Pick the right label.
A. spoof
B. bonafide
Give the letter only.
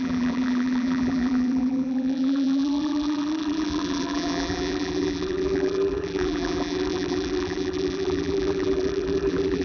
A